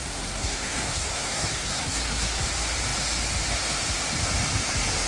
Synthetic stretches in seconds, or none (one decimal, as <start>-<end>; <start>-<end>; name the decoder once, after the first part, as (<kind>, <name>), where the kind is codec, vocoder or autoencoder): 0.0-2.4 (codec, SNAC)